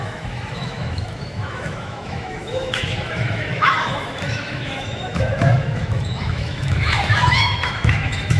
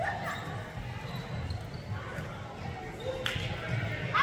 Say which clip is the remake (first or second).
first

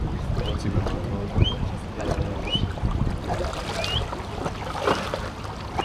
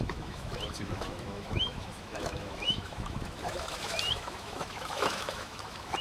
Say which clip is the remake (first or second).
second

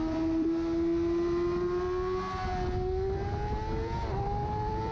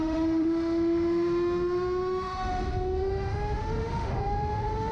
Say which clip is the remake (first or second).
second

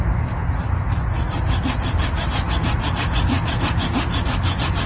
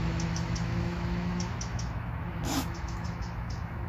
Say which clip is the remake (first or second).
second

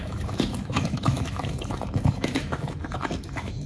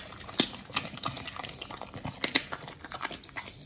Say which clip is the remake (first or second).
first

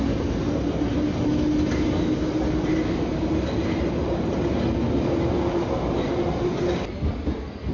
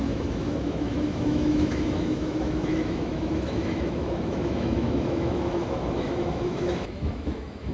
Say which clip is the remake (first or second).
second